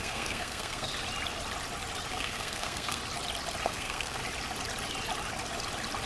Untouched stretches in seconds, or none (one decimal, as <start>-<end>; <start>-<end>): 0.9-2.1; 3.0-3.6; 4.2-6.1